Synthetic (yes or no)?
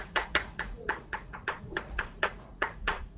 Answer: yes